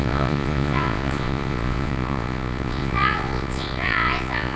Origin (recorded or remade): remade